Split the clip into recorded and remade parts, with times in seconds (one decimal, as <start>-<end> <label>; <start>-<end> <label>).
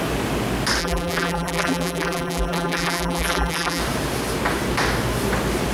0.0-0.8 recorded; 0.8-3.8 remade; 3.8-5.7 recorded